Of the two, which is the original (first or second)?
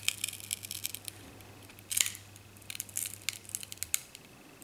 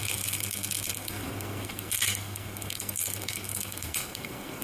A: first